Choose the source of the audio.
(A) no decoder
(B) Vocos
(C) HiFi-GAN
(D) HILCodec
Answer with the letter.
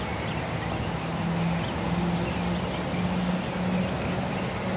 A